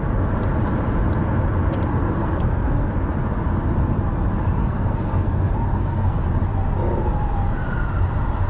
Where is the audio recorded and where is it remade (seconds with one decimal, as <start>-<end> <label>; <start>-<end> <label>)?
0.0-1.9 recorded; 1.9-2.9 remade; 2.9-4.6 recorded; 4.6-6.2 remade; 6.2-8.5 recorded